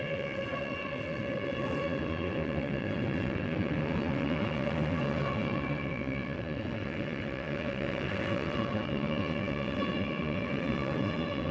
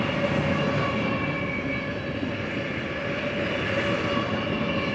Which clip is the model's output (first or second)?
first